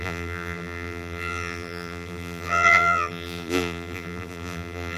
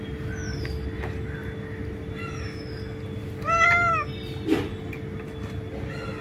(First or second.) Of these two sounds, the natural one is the second